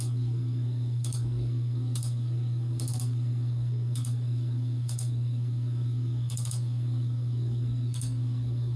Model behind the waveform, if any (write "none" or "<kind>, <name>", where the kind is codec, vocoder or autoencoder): codec, SNAC